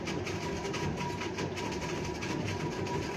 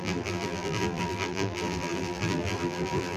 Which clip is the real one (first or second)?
first